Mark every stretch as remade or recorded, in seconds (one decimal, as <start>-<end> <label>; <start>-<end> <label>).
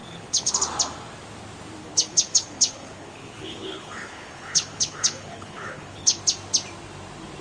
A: 0.0-0.5 remade; 0.5-1.8 recorded; 1.8-6.2 remade; 6.2-7.4 recorded